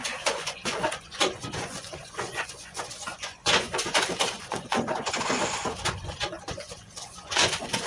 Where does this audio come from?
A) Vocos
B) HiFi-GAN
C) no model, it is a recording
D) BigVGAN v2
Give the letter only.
A